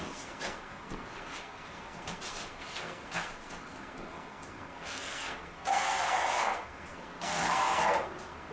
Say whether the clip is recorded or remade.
remade